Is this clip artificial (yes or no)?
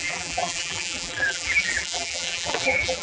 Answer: yes